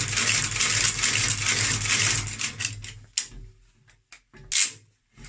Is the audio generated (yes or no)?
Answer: no